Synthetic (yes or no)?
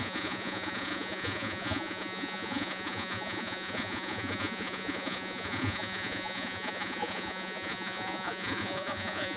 yes